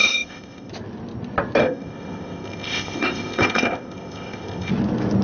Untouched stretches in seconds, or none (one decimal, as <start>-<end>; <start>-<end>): 0.7-1.6; 4.7-5.2